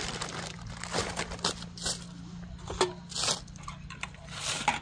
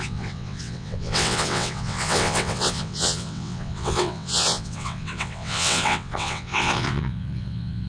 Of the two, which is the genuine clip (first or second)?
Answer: first